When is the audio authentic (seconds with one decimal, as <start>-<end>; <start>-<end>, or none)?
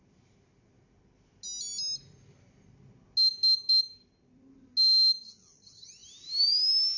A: 0.0-7.0